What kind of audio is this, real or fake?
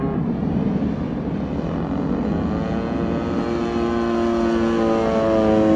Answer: real